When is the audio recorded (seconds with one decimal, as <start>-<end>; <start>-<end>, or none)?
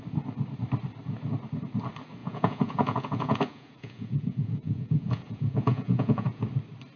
0.0-2.2; 6.4-7.0